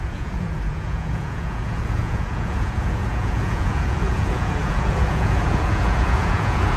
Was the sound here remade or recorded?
remade